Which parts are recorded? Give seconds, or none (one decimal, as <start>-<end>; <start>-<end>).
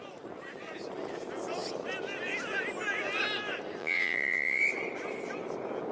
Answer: 0.0-3.8; 4.6-5.9